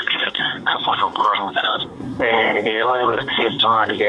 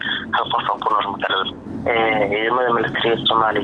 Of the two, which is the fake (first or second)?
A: first